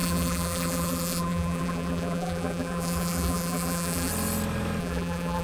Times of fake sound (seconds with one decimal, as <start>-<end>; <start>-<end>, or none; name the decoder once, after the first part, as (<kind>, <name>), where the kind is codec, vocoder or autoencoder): 0.0-4.1 (vocoder, BigVGAN v2); 4.8-5.4